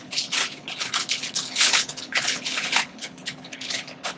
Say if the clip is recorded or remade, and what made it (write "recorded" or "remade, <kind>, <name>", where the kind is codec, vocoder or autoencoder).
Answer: remade, codec, HILCodec